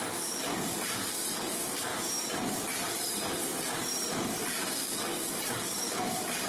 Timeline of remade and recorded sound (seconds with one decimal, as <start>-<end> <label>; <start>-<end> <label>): 0.0-1.9 remade; 1.9-4.1 recorded; 4.1-6.5 remade